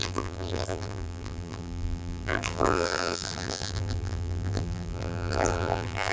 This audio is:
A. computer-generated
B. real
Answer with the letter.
A